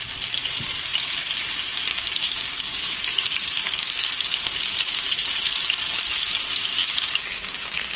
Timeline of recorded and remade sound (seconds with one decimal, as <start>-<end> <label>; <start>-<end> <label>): 0.0-1.9 recorded; 1.9-5.0 remade; 5.0-6.8 recorded; 6.8-8.0 remade